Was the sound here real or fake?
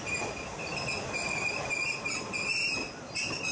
real